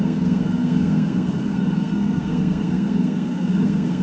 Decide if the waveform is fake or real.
fake